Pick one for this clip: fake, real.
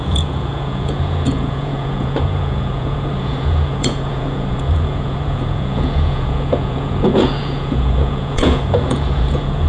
fake